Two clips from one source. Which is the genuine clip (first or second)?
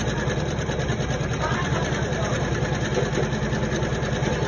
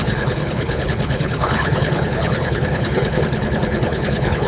first